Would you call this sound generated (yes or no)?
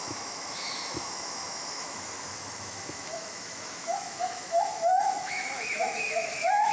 yes